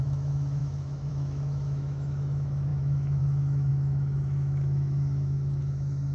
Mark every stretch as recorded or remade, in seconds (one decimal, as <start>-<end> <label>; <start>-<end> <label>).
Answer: 0.0-6.1 remade